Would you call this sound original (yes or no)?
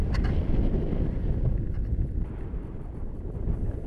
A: yes